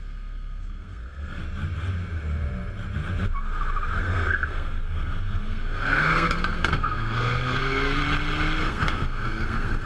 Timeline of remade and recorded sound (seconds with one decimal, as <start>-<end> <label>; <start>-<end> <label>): 0.0-1.4 remade; 1.4-4.0 recorded; 4.0-8.0 remade; 8.0-8.6 recorded; 8.6-9.9 remade